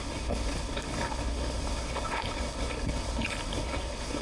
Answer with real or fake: fake